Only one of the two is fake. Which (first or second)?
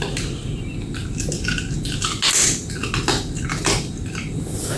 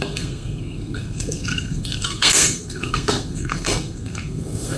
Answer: second